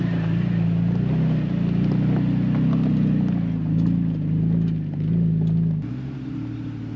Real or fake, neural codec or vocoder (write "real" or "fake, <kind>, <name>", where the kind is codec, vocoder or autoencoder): real